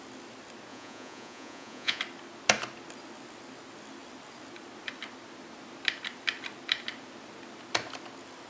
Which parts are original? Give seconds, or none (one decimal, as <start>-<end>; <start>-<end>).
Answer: 0.0-0.7; 2.0-8.5